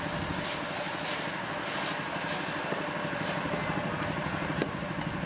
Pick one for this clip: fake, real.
real